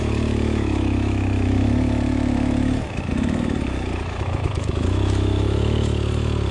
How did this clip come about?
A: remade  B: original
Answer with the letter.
A